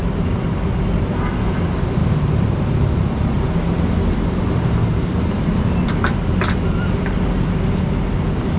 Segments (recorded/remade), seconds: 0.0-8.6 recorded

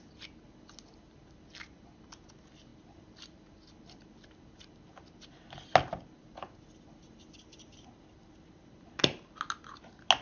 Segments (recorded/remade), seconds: 0.0-7.7 recorded; 7.7-9.0 remade; 9.0-10.2 recorded